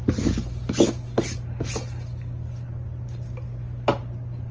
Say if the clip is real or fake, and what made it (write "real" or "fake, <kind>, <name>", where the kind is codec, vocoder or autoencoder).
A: real